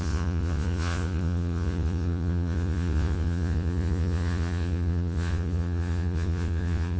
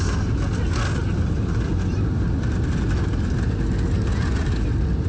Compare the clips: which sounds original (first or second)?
second